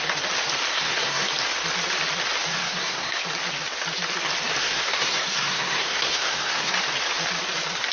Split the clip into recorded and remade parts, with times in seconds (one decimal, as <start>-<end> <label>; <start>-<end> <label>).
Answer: 0.0-0.7 recorded; 0.7-1.3 remade; 1.3-2.5 recorded; 2.5-3.2 remade; 3.2-4.6 recorded; 4.6-6.8 remade; 6.8-7.9 recorded